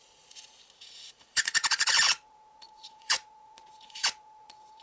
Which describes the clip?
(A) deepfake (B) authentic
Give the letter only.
A